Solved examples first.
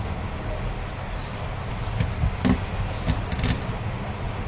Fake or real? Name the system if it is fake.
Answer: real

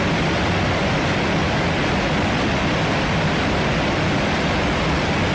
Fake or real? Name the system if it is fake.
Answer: real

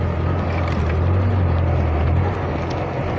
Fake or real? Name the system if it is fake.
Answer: real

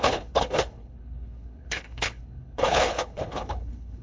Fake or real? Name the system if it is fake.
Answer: fake, codec, HILCodec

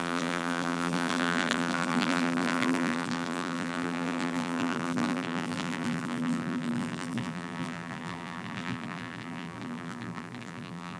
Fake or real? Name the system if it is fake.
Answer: fake, vocoder, BigVGAN v2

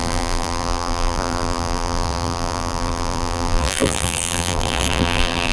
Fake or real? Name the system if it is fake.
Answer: fake, vocoder, BigVGAN v2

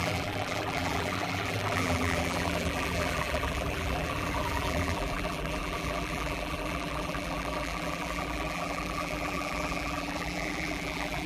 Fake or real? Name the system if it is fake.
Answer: fake, vocoder, BigVGAN v2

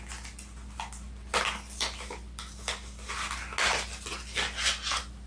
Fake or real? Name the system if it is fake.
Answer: real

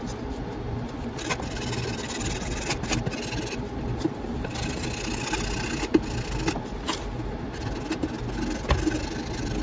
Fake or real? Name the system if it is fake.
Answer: real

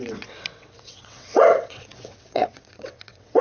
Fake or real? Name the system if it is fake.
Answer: fake, vocoder, WaveNeXt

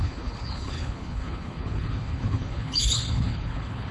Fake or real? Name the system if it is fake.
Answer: fake, codec, HILCodec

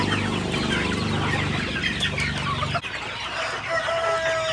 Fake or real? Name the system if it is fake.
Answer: real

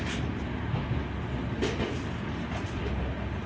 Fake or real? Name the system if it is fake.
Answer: real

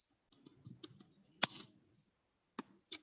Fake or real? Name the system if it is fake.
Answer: real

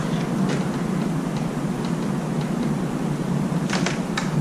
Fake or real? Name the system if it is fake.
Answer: real